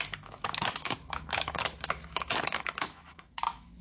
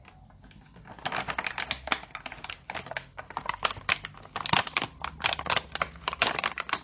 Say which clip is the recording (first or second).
second